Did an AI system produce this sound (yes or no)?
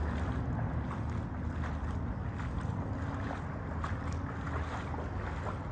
no